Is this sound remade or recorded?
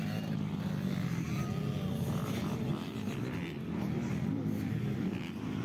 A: recorded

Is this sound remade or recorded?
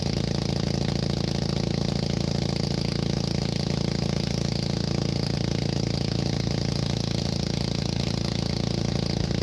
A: recorded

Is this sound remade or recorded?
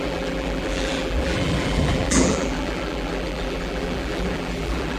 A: remade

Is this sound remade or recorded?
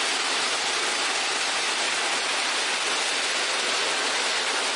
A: recorded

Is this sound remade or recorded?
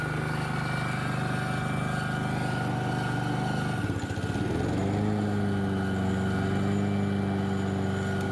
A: recorded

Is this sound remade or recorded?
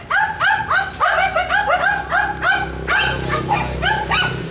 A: recorded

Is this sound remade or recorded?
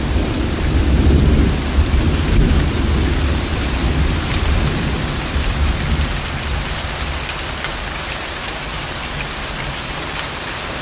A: remade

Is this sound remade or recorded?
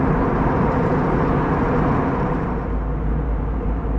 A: remade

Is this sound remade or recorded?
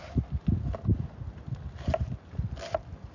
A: recorded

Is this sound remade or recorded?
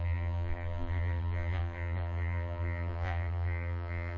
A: remade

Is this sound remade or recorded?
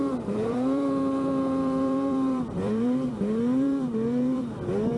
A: remade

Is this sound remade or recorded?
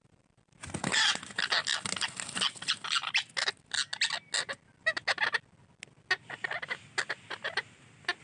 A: recorded